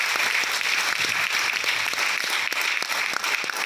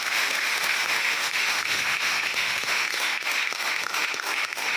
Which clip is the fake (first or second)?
second